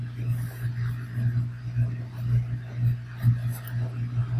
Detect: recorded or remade recorded